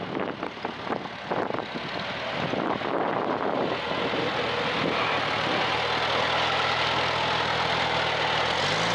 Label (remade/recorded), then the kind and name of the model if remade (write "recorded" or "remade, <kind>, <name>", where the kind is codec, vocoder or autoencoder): recorded